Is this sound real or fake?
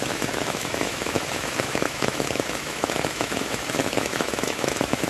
fake